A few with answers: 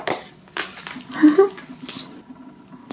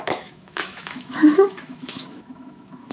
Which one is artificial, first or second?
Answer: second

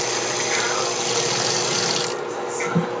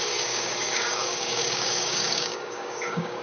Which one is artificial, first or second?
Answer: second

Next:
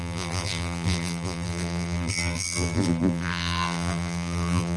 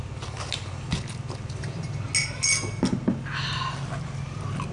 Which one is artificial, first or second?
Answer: first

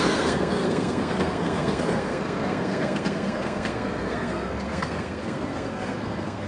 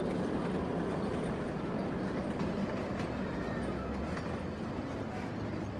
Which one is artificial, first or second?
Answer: first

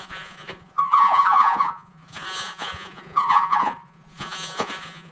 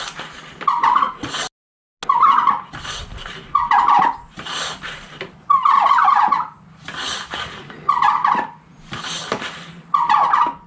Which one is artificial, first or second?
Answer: first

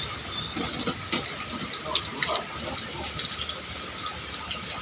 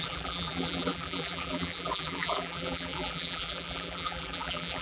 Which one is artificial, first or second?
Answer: second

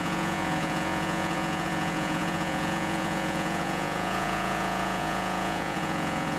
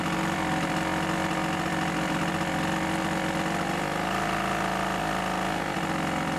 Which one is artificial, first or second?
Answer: first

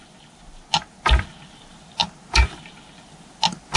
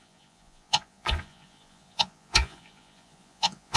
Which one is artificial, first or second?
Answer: second